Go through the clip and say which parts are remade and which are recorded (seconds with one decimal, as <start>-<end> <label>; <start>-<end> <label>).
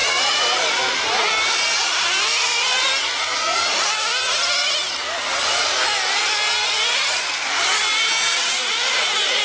0.0-9.4 recorded